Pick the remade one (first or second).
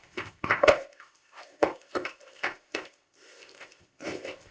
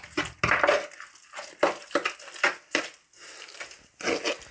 first